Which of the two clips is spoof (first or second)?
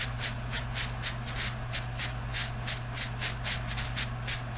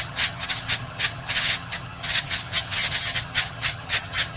second